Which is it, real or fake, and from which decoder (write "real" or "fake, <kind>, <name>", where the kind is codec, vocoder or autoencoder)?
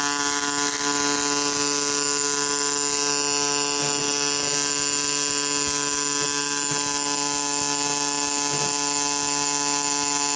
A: real